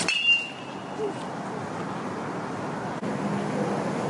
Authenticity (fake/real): real